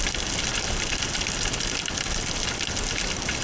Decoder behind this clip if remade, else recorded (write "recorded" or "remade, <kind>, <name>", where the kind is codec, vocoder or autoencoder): recorded